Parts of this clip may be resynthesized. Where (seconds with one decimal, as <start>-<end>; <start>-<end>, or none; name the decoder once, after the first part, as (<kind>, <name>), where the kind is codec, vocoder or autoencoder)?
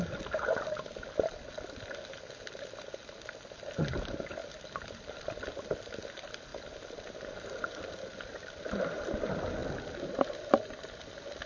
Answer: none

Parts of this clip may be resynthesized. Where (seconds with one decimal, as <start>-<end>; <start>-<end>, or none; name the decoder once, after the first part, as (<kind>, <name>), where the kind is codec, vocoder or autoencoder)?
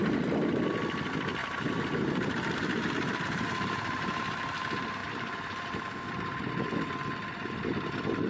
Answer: 1.4-4.6 (vocoder, BigVGAN v2); 5.0-6.5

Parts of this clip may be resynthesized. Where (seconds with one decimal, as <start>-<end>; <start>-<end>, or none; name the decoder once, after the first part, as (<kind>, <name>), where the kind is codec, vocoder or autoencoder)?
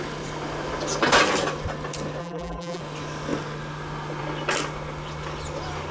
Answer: 2.2-2.8 (vocoder, BigVGAN v2)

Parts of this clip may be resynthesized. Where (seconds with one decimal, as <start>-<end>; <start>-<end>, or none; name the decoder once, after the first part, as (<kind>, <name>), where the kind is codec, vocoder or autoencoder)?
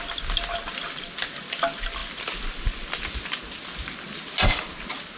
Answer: none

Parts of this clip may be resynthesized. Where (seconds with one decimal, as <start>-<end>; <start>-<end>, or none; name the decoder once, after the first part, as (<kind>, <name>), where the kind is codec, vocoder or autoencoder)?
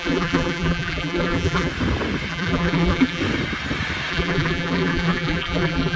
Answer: 0.0-1.7 (vocoder, BigVGAN v2); 2.3-3.2; 4.1-6.0